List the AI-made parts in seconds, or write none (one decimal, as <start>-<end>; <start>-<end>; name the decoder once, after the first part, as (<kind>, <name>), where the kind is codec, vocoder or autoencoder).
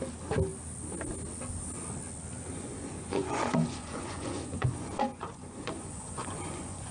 2.5-6.9 (vocoder, Vocos)